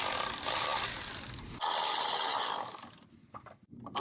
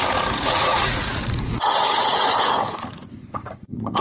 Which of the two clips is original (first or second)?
first